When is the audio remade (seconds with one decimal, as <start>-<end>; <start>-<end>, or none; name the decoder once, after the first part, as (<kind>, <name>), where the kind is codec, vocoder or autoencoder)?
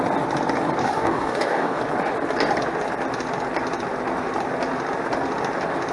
0.8-1.8 (codec, DAC)